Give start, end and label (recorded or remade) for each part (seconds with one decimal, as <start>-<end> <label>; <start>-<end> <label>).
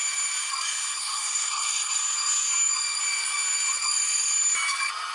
0.0-1.0 recorded; 1.0-2.0 remade; 2.0-5.1 recorded